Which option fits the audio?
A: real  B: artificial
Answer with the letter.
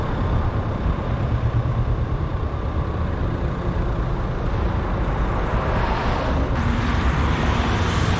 B